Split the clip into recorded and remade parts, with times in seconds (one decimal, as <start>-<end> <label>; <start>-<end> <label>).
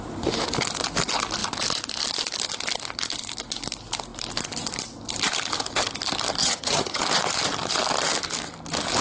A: 0.0-6.4 recorded; 6.4-7.0 remade; 7.0-9.0 recorded